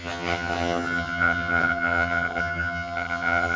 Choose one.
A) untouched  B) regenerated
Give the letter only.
B